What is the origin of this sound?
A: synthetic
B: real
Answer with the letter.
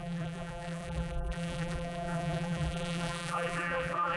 A